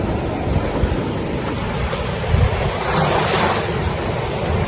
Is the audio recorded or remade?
recorded